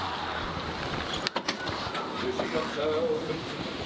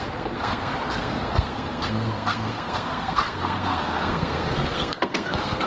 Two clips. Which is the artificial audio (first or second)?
second